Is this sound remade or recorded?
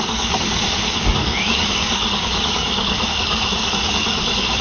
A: remade